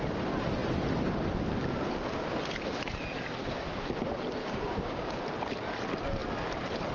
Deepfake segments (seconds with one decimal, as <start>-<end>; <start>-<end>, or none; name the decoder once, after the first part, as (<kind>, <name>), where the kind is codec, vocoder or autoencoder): 4.4-5.2 (codec, DAC)